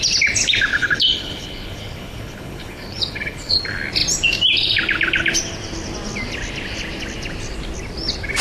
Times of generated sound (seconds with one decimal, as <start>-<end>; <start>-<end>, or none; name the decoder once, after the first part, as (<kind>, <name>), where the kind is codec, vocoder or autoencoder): 0.7-3.6 (codec, HILCodec)